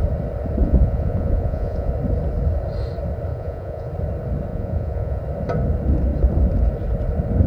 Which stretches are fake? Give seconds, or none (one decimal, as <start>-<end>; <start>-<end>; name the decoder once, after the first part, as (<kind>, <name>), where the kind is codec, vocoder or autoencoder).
0.6-1.9 (vocoder, Vocos); 3.3-3.9; 4.5-5.2